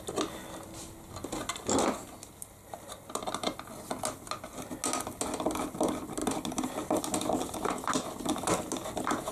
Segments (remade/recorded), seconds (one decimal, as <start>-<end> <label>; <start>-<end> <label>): 0.0-9.3 recorded